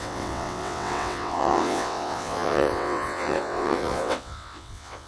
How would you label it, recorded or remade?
remade